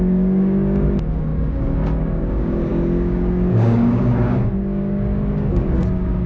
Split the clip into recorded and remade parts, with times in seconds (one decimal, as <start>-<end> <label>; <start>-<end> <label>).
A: 0.0-6.3 remade